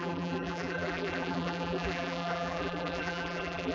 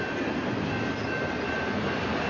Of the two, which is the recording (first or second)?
second